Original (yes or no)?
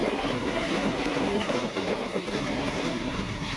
no